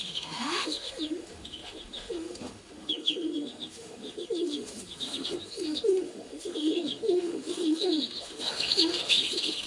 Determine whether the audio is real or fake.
fake